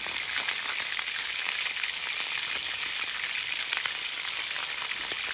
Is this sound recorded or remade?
recorded